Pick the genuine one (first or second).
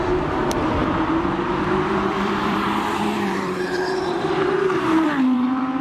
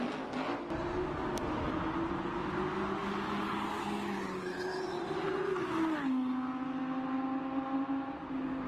second